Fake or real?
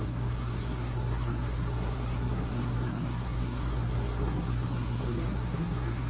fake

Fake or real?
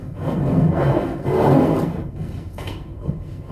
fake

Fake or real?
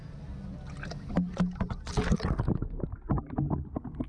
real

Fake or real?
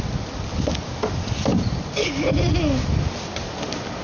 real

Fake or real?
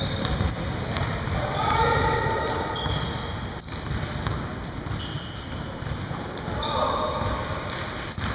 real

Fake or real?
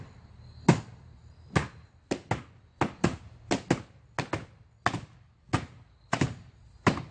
real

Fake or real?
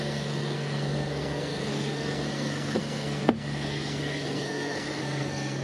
fake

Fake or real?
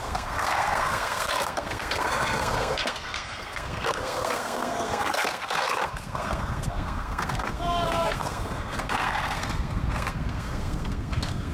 fake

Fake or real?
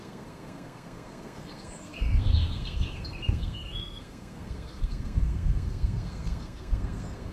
fake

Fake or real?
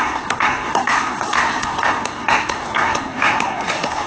fake